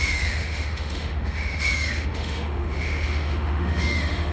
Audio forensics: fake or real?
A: fake